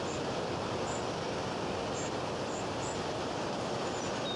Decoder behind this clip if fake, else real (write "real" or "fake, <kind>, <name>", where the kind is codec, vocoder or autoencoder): real